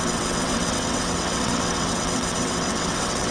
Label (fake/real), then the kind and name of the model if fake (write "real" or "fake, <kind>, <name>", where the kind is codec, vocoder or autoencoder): fake, vocoder, WaveNeXt